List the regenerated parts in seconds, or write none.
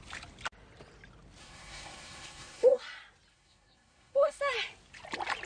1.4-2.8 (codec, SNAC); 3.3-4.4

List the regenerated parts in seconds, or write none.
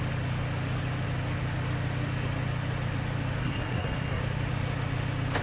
3.4-4.2 (codec, SNAC)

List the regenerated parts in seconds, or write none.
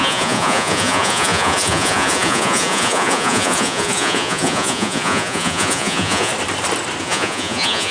0.0-6.3 (vocoder, Vocos); 7.0-7.9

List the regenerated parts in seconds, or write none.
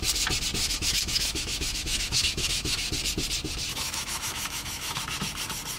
0.6-2.9 (autoencoder, DAC-VAE); 3.7-5.0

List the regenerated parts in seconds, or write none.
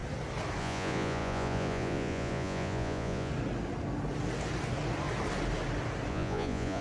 0.6-3.3 (vocoder, Vocos); 6.1-6.8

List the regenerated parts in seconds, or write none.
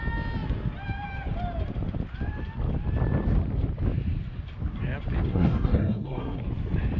5.3-6.4 (codec, SNAC)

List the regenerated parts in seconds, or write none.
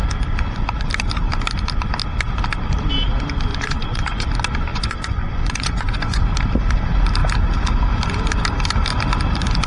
3.5-4.3 (vocoder, Vocos); 4.7-6.2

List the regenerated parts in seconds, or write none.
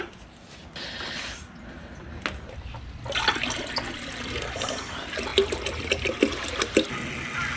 none